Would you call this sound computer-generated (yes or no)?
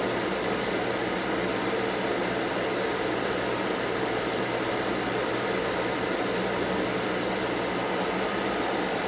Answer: no